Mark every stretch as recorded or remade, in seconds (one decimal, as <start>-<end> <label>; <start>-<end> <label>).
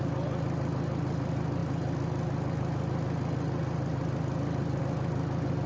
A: 0.0-5.7 recorded